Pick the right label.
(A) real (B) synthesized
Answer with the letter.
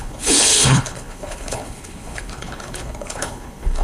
B